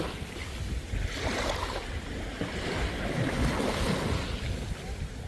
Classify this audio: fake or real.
real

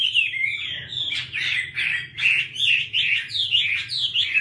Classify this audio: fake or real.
real